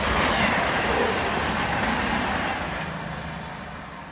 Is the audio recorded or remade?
recorded